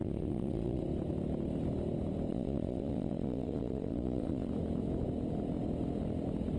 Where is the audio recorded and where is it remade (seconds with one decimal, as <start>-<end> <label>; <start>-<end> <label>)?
0.0-0.8 remade; 0.8-2.3 recorded; 2.3-4.5 remade; 4.5-6.6 recorded